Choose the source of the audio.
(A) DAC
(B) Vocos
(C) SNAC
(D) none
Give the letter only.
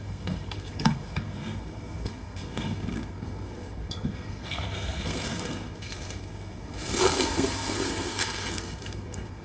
C